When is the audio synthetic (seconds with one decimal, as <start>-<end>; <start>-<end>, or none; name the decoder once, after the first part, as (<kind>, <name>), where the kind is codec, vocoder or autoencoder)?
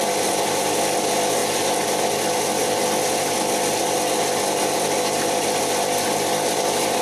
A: none